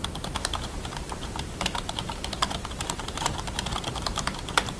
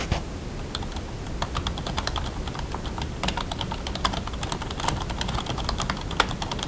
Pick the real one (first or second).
second